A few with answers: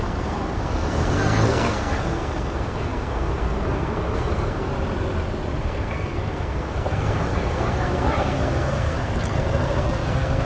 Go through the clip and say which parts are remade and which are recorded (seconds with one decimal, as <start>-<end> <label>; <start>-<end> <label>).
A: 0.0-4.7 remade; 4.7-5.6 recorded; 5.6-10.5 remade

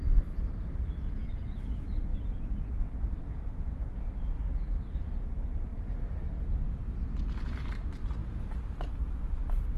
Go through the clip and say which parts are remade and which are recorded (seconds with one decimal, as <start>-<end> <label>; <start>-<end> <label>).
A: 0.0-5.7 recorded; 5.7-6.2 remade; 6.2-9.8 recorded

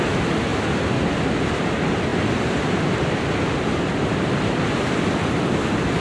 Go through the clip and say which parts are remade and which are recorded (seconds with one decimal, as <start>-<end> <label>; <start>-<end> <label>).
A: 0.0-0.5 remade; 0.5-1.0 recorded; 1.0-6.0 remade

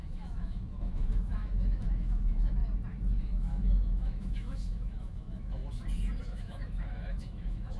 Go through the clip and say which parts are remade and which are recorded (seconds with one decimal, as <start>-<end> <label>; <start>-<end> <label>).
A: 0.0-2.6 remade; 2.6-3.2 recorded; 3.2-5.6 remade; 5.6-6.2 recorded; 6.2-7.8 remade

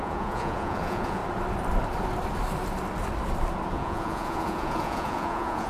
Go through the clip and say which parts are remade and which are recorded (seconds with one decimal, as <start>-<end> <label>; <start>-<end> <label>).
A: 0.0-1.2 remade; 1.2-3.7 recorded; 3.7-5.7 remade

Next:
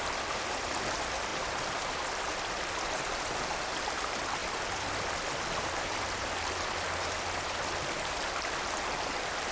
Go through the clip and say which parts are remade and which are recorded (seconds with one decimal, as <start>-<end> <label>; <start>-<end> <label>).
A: 0.0-4.4 recorded; 4.4-6.3 remade; 6.3-9.5 recorded

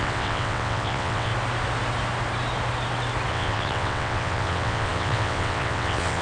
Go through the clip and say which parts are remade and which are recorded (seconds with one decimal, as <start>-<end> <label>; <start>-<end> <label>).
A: 0.0-1.3 remade; 1.3-3.3 recorded; 3.3-6.2 remade

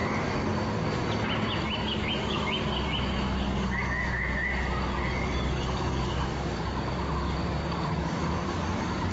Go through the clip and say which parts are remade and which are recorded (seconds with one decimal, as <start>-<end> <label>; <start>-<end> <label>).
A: 0.0-1.8 recorded; 1.8-9.1 remade